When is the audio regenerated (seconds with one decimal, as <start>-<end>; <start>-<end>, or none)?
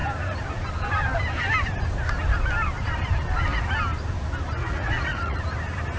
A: 4.6-5.4